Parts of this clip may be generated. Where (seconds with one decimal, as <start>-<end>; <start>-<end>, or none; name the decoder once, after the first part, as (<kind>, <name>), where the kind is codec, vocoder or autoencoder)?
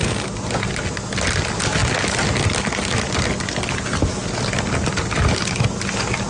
none